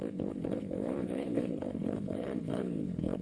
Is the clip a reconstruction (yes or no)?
yes